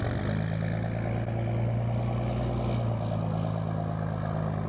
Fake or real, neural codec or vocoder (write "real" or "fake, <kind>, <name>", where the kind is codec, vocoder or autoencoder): real